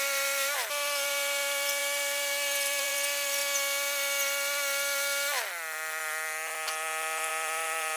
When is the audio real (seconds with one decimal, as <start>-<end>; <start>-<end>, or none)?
3.4-7.3